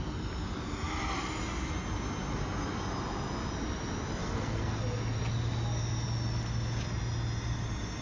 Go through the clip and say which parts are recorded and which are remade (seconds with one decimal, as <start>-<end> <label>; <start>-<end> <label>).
0.0-4.2 recorded; 4.2-4.8 remade; 4.8-8.0 recorded